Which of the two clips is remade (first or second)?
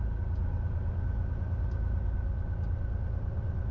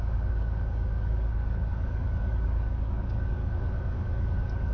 second